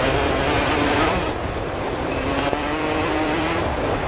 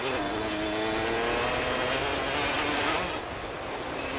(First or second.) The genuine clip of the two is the second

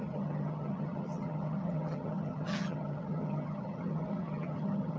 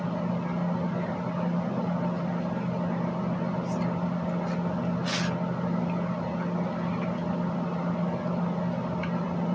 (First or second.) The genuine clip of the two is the second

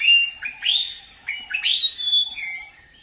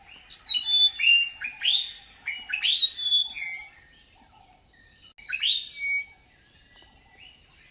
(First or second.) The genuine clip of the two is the second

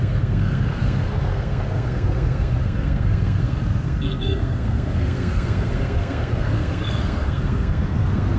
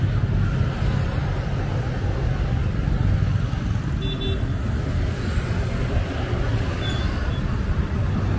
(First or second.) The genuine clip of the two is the second